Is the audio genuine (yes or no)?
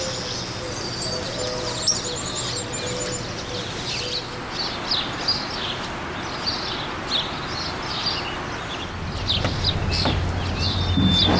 yes